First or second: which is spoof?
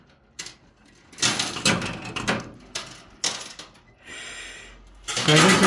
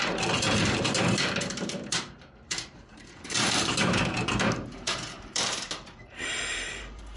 second